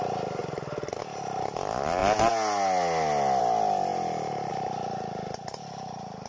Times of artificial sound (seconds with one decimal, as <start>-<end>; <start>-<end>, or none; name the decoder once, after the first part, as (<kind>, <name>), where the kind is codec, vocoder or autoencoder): none